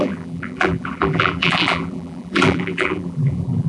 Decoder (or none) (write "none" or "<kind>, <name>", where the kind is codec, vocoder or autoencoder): vocoder, BigVGAN v2